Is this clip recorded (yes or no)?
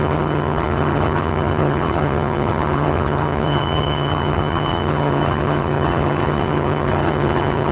no